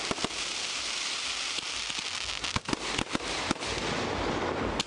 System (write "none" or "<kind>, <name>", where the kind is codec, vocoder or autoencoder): none